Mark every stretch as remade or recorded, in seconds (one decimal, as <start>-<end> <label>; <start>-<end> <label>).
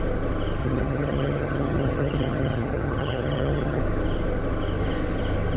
0.0-0.6 recorded; 0.6-3.8 remade; 3.8-5.6 recorded